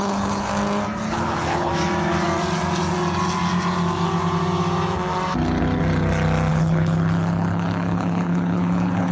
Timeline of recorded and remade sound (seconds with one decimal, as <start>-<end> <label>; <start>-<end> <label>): 0.0-0.5 remade; 0.5-1.1 recorded; 1.1-1.7 remade; 1.7-6.5 recorded; 6.5-9.1 remade